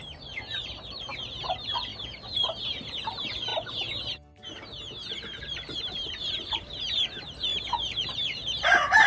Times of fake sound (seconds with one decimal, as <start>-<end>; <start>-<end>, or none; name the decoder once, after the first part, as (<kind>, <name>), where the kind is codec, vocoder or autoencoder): 0.0-1.9 (vocoder, BigVGAN v2); 2.6-3.5; 5.4-9.1